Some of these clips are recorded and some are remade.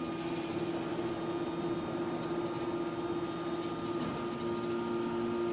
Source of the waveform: recorded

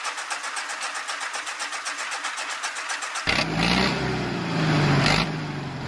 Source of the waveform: recorded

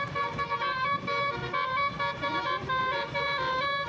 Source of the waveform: recorded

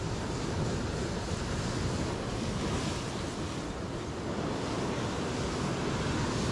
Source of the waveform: recorded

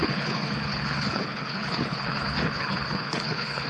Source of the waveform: remade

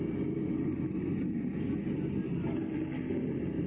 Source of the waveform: recorded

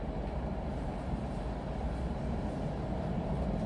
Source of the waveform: recorded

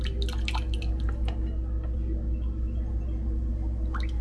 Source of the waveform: recorded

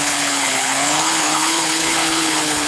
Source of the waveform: remade